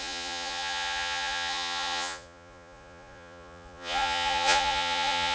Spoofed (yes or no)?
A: yes